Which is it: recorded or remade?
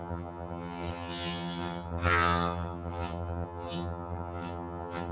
remade